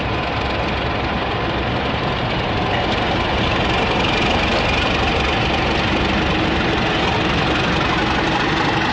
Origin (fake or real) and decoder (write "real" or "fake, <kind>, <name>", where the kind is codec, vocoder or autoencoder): real